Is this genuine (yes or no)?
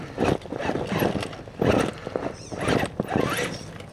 yes